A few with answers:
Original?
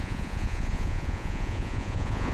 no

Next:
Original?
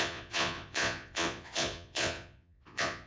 no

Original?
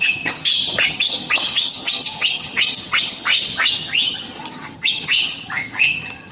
no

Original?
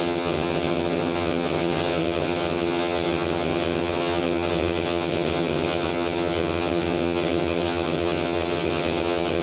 no